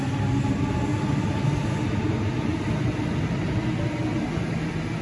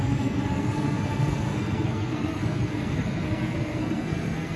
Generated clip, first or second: second